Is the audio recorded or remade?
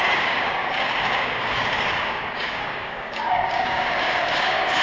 remade